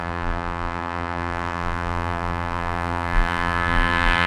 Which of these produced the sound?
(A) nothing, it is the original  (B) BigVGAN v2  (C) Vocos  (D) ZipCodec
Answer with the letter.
B